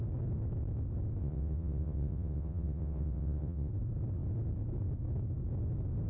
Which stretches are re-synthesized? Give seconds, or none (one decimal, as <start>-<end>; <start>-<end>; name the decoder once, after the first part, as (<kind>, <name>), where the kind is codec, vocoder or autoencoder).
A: 1.2-3.7 (vocoder, WaveNeXt)